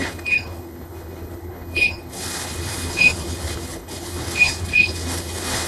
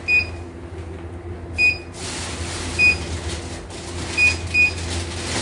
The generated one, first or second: first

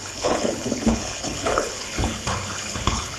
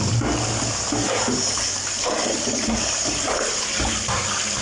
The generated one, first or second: first